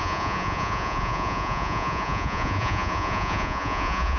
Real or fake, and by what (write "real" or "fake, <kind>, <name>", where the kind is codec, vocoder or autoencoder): fake, vocoder, Vocos